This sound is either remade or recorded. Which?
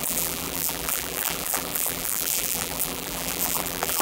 remade